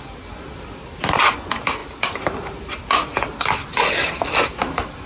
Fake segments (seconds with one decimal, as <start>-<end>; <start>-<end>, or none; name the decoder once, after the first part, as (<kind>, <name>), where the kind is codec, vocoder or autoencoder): none